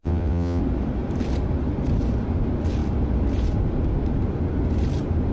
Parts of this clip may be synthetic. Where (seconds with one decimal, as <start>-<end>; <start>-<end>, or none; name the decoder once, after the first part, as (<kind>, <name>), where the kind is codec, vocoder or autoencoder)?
0.0-0.6 (vocoder, WaveNeXt)